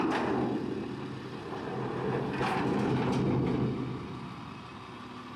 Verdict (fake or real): real